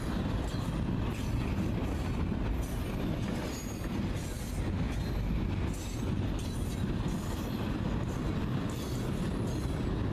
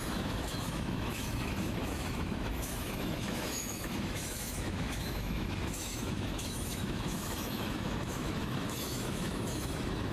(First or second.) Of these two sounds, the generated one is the second